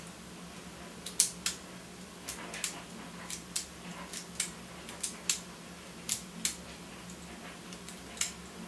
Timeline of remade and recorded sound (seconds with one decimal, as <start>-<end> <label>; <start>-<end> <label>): 0.0-8.7 recorded